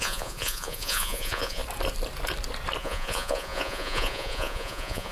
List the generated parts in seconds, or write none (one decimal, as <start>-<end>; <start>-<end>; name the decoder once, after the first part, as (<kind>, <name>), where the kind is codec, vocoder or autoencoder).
0.0-1.6 (vocoder, Vocos); 2.8-5.1